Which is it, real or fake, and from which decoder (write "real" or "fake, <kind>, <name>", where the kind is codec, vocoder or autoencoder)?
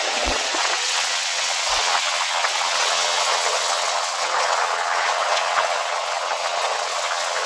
fake, vocoder, WaveNeXt